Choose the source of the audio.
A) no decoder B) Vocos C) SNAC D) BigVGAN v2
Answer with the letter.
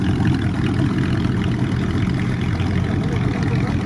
A